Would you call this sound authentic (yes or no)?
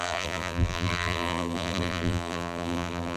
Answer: no